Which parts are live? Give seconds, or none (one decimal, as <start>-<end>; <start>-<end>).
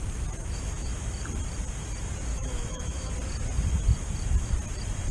0.0-0.4; 1.0-2.3; 3.1-5.1